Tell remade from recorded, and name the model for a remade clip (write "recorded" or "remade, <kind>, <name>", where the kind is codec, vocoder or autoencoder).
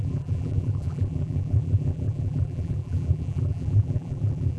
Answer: remade, vocoder, BigVGAN v2